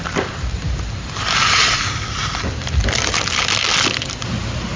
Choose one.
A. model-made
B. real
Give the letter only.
B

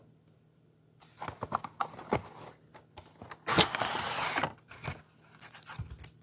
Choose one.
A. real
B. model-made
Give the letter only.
A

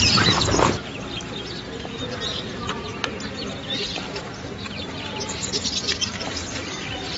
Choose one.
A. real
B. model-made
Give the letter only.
B